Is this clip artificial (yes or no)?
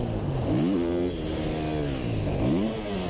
no